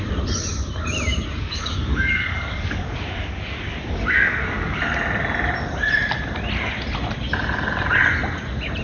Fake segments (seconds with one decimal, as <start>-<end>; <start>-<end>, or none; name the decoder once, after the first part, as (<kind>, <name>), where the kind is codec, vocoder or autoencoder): 1.4-4.8 (codec, DAC)

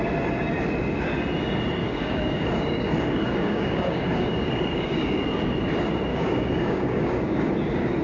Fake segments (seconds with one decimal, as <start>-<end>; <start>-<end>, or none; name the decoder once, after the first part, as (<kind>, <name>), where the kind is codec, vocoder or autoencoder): 1.8-5.4 (codec, DAC); 6.1-7.5

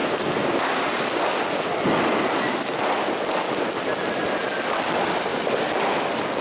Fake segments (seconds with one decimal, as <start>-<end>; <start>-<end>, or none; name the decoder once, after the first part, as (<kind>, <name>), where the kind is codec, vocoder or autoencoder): none